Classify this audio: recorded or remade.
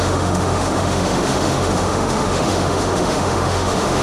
remade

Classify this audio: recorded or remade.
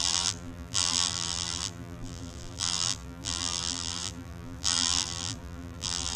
remade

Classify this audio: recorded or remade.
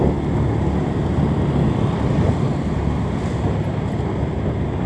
recorded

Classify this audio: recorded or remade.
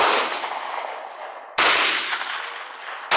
recorded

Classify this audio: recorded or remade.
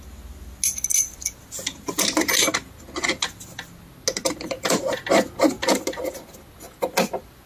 recorded